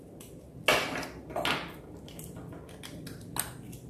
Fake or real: real